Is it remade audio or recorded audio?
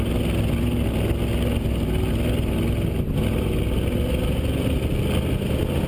recorded